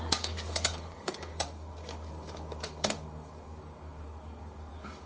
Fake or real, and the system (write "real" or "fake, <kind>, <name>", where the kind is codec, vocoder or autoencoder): fake, codec, DAC